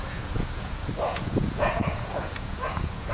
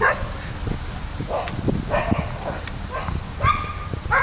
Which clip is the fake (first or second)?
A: first